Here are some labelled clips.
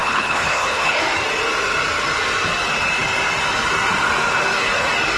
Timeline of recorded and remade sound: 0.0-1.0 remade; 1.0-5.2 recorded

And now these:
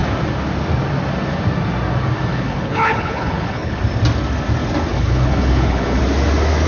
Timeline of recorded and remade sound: 0.0-2.3 recorded; 2.3-3.8 remade; 3.8-4.9 recorded; 4.9-6.0 remade; 6.0-6.7 recorded